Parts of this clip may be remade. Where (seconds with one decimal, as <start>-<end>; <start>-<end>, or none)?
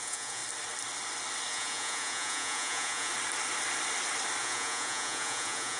0.0-0.4; 1.5-3.1; 4.4-5.8